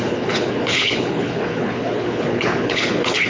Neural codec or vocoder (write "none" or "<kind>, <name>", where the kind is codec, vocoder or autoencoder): codec, HILCodec